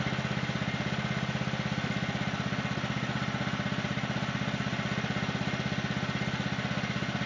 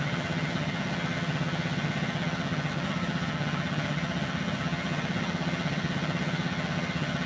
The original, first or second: first